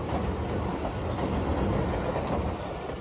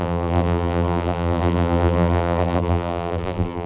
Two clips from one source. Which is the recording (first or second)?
first